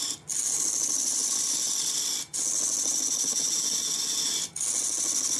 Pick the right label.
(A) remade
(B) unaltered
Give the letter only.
B